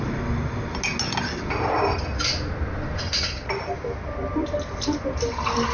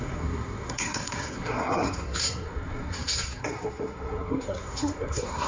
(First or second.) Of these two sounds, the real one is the first